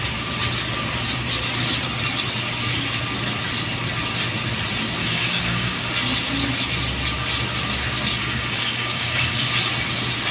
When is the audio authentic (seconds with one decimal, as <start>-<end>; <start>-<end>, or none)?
0.0-5.0; 5.9-8.2; 9.5-10.3